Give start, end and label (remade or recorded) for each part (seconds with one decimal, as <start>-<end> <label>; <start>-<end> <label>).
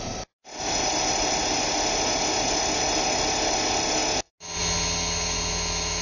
0.0-6.0 recorded